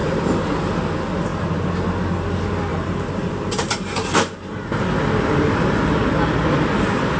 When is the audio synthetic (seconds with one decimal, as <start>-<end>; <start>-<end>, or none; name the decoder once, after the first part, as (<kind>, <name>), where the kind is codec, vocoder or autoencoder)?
0.0-0.8 (vocoder, BigVGAN v2); 2.7-5.0